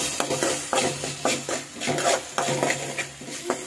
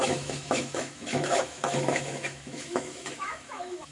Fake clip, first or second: second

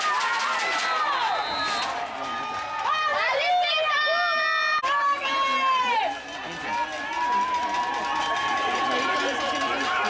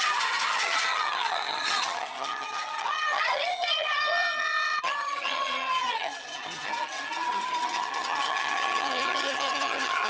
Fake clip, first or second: second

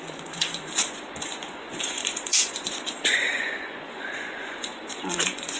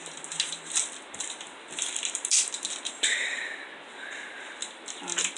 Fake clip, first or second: first